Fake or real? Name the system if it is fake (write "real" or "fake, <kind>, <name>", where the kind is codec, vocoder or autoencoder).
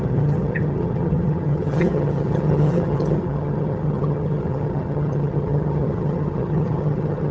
fake, vocoder, HiFi-GAN